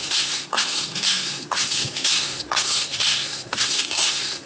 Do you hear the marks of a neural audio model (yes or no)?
yes